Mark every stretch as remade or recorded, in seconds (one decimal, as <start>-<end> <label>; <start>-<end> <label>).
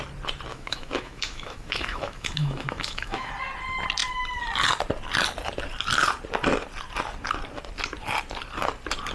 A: 0.0-0.5 recorded; 0.5-3.3 remade; 3.3-9.1 recorded